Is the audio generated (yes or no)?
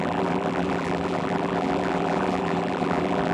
yes